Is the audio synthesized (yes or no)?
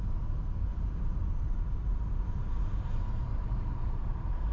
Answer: yes